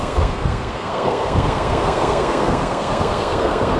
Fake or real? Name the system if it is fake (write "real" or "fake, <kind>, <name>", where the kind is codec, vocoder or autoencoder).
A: fake, codec, SNAC